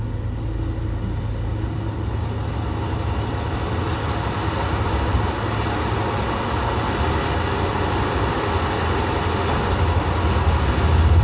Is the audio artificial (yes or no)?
no